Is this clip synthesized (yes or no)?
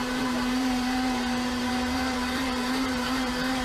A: yes